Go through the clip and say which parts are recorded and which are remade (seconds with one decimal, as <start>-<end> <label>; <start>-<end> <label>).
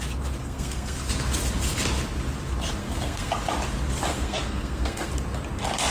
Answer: 0.0-0.4 recorded; 0.4-1.0 remade; 1.0-2.8 recorded; 2.8-3.3 remade; 3.3-4.1 recorded; 4.1-5.1 remade; 5.1-5.9 recorded